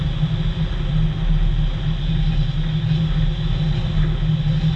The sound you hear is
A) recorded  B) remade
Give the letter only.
A